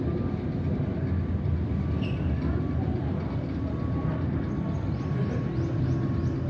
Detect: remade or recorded recorded